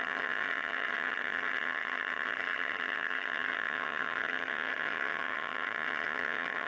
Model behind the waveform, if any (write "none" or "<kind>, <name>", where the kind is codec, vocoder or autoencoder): vocoder, HiFi-GAN